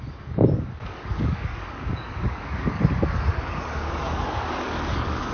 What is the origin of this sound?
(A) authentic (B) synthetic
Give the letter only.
B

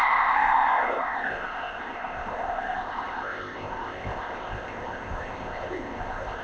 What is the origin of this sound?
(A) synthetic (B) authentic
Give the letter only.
A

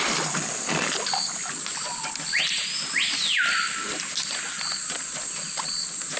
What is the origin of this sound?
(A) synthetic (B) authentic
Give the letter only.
B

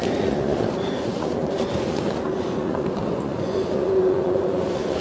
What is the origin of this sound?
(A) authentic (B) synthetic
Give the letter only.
B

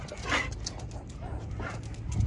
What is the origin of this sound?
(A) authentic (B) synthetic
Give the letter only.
A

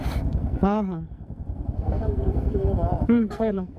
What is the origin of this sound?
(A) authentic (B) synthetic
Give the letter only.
B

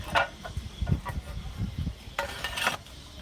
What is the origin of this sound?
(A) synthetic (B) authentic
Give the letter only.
B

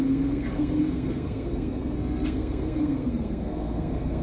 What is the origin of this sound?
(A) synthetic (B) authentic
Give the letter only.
A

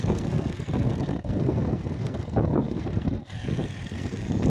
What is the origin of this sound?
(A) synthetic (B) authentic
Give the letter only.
A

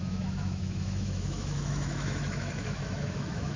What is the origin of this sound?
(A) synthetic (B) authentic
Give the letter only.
A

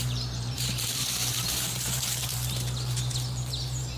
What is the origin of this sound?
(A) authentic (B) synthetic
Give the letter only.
B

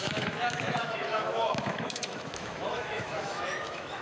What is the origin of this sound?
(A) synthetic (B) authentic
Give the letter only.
A